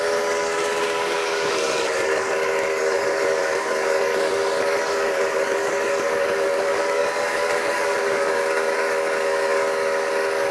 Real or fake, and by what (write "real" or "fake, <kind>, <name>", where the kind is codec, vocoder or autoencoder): fake, codec, DAC